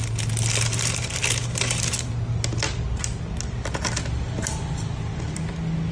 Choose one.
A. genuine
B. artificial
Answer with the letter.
A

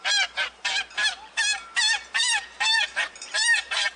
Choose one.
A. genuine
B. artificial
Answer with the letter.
B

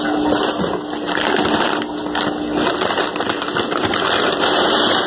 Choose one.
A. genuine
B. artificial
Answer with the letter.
A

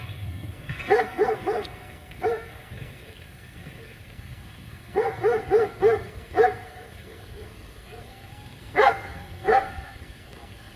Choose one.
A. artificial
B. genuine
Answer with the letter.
A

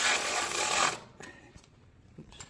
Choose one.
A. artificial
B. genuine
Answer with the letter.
A